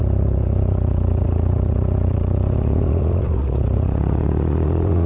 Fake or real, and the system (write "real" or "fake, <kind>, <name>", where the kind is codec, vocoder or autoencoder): fake, vocoder, Vocos